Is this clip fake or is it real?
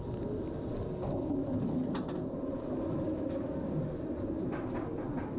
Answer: real